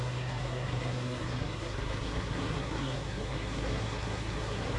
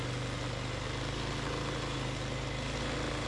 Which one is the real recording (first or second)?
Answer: second